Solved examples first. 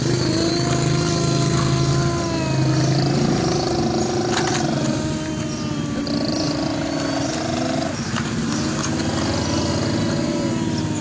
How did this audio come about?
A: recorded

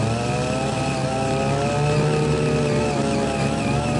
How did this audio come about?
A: recorded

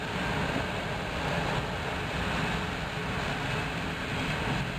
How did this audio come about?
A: recorded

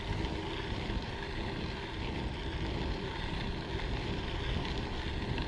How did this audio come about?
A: recorded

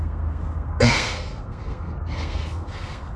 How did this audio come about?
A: remade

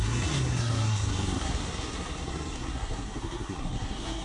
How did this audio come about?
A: remade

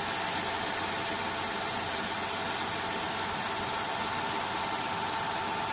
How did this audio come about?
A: recorded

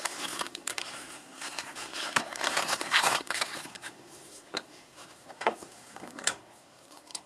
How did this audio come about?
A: remade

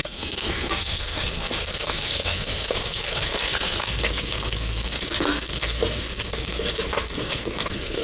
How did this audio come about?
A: remade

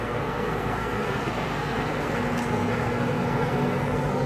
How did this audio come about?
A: remade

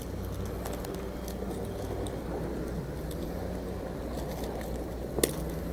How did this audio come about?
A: recorded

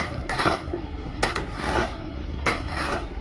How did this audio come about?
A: remade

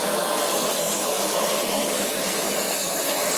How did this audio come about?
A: remade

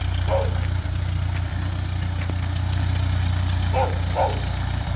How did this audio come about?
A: recorded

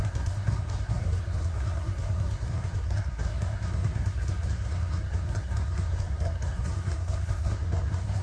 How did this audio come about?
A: remade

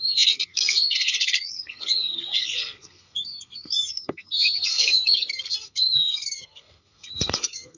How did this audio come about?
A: remade